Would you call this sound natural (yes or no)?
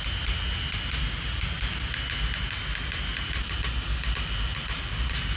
yes